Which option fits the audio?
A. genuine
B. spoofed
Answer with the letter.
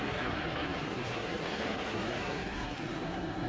B